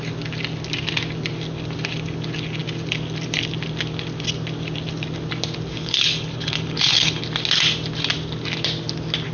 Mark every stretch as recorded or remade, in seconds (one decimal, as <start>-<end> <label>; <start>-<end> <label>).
0.0-5.7 recorded; 5.7-7.2 remade; 7.2-9.3 recorded